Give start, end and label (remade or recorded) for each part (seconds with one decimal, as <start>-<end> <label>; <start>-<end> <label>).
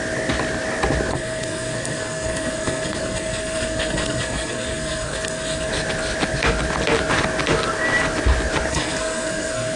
0.0-1.1 recorded; 1.1-5.7 remade; 5.7-8.7 recorded; 8.7-9.8 remade